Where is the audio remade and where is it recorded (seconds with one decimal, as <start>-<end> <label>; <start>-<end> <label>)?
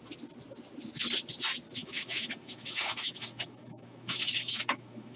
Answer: 0.0-1.8 recorded; 1.8-5.2 remade